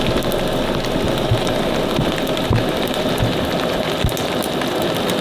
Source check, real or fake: real